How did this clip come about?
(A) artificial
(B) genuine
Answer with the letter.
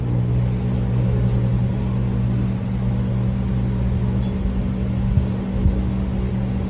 B